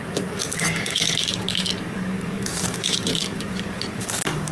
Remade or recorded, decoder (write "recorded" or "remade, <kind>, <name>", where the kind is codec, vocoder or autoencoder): remade, codec, DAC